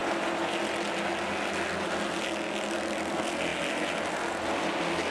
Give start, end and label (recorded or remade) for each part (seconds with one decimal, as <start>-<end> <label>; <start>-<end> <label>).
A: 0.0-5.1 recorded